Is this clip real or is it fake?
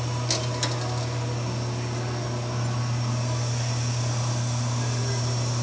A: real